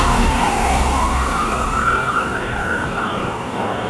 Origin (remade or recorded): remade